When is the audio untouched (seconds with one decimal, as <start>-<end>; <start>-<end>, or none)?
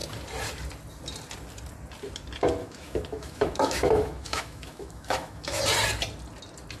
0.0-2.6; 5.6-6.8